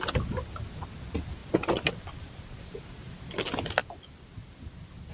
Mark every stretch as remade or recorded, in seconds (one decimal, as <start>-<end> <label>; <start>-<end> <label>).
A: 0.0-1.4 recorded; 1.4-3.3 remade; 3.3-3.8 recorded; 3.8-5.1 remade